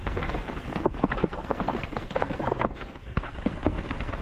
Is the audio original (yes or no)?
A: no